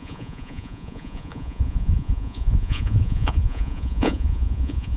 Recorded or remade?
remade